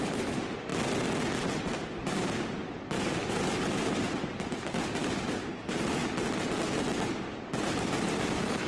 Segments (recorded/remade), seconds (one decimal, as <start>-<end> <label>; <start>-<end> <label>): 0.0-0.7 remade; 0.7-1.6 recorded; 1.6-6.0 remade; 6.0-7.5 recorded; 7.5-8.7 remade